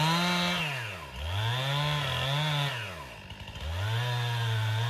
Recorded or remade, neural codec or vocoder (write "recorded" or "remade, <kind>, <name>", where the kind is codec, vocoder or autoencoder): recorded